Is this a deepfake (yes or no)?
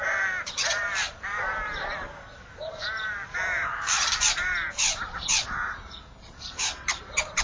yes